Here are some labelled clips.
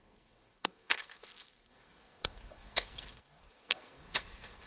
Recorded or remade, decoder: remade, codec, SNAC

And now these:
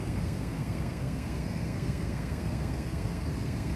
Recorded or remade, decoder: remade, codec, SNAC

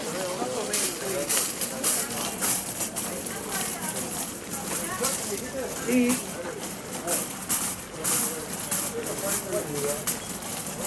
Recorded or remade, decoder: recorded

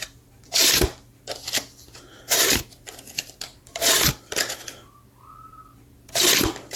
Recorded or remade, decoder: remade, vocoder, BigVGAN v2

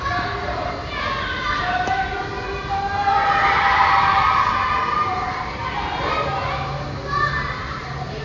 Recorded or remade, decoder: recorded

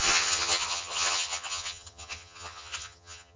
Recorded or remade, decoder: remade, vocoder, HiFi-GAN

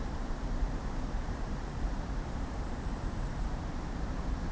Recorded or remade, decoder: remade, vocoder, BigVGAN v2